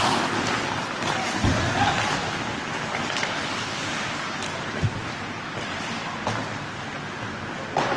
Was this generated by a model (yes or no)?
no